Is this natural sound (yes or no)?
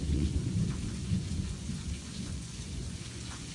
no